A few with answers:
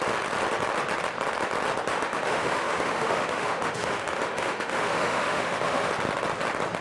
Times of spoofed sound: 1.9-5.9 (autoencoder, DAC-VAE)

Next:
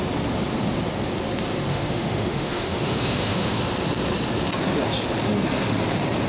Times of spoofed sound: 1.7-3.6 (autoencoder, DAC-VAE)

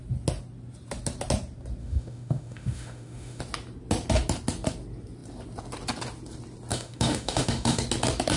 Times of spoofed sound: 1.8-3.4 (autoencoder, DAC-VAE); 6.7-7.8

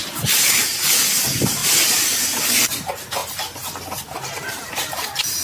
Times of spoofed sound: none